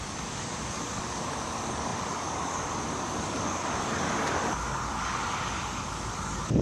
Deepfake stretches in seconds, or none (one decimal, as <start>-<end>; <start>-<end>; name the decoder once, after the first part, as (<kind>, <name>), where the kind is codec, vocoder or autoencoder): 0.0-6.6 (codec, DAC)